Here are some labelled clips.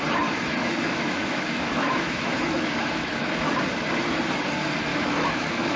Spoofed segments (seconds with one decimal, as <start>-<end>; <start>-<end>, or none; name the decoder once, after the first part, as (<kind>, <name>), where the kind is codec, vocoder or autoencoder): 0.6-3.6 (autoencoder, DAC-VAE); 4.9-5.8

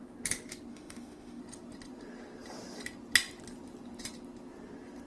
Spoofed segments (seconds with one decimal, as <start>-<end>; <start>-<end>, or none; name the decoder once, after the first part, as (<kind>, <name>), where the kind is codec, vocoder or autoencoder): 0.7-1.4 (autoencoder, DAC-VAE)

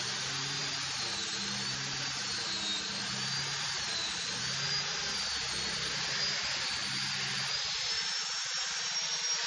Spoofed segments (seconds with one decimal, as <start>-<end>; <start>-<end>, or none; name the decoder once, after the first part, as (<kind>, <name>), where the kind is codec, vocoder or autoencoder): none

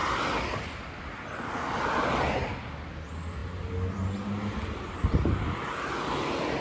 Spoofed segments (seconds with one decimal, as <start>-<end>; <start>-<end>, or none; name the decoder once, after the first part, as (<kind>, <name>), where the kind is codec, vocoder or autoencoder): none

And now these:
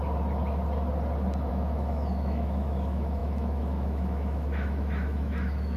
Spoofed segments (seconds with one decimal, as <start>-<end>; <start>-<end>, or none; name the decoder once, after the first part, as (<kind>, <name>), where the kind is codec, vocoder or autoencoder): 1.5-5.8 (autoencoder, DAC-VAE)